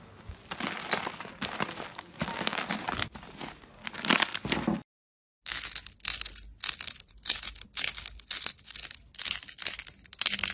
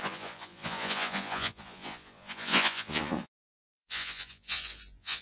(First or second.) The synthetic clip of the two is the second